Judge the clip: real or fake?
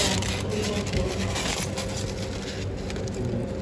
real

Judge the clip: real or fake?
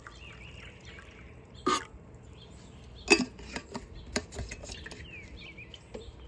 real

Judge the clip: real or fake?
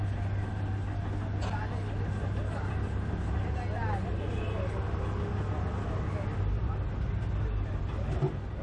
real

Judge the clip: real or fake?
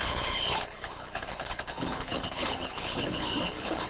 fake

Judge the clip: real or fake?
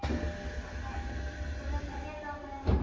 real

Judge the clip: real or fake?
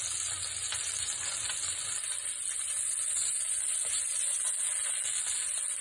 real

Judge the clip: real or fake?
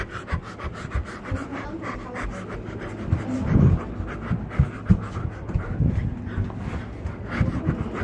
real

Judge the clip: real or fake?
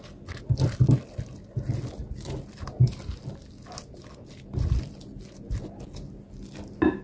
real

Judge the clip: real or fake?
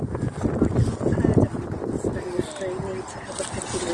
real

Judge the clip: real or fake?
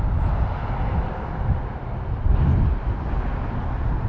real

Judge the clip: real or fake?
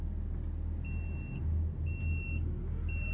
real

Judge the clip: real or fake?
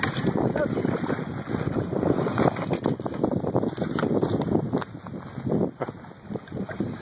real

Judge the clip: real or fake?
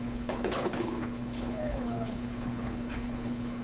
fake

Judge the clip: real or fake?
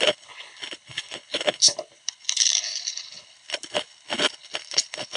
fake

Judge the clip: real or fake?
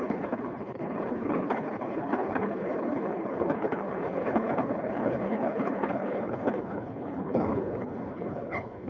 fake